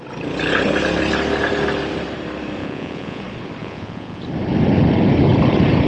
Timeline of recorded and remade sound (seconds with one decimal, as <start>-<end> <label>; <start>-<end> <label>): 0.0-2.6 recorded; 2.6-3.2 remade; 3.2-3.6 recorded; 3.6-4.2 remade; 4.2-5.9 recorded